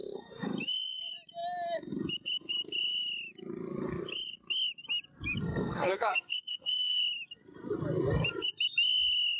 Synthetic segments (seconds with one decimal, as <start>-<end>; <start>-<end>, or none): 5.4-7.0